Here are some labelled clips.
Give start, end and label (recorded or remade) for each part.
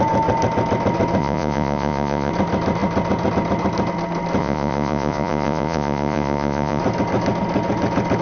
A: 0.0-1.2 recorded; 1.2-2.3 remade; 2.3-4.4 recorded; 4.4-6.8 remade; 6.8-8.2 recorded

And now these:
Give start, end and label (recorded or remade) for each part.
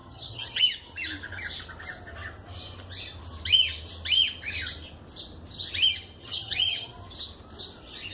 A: 0.0-0.6 remade; 0.6-6.2 recorded; 6.2-6.9 remade; 6.9-8.1 recorded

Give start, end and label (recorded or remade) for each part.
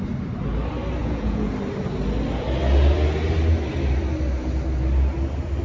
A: 0.0-1.0 recorded; 1.0-1.5 remade; 1.5-5.6 recorded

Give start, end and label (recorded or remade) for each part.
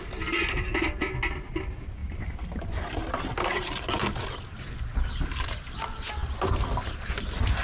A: 0.0-7.6 recorded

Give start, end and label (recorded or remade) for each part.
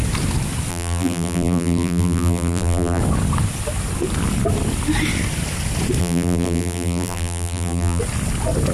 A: 0.0-0.7 recorded; 0.7-3.0 remade; 3.0-6.0 recorded; 6.0-8.0 remade; 8.0-8.7 recorded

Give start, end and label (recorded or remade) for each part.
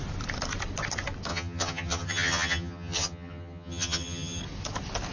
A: 0.0-1.3 recorded; 1.3-4.4 remade; 4.4-5.1 recorded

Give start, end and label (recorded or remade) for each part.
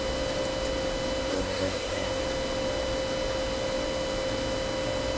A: 0.0-1.3 recorded; 1.3-2.1 remade; 2.1-5.2 recorded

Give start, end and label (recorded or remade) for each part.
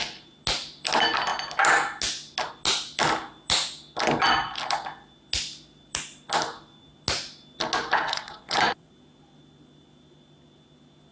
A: 0.0-8.0 recorded; 8.0-8.9 remade; 8.9-11.1 recorded